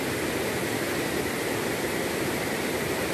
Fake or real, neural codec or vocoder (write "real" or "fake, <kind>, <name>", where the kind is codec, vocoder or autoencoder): real